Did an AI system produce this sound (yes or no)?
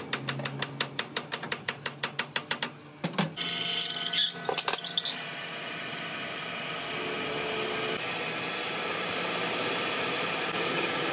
no